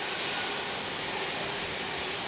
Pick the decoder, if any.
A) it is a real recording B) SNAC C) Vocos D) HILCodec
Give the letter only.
A